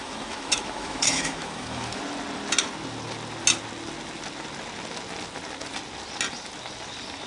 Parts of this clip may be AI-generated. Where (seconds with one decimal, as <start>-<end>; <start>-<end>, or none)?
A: 0.0-2.0